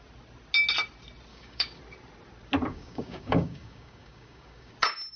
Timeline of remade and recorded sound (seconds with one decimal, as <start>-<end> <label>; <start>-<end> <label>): 0.0-1.3 recorded; 1.3-1.8 remade; 1.8-2.7 recorded; 2.7-4.7 remade; 4.7-5.2 recorded